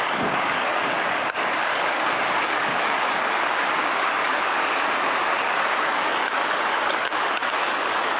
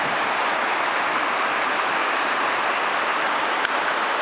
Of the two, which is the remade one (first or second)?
first